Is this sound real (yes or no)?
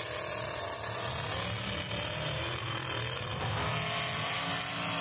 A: yes